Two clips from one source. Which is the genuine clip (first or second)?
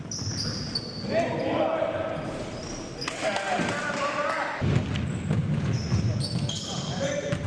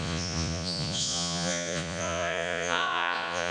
first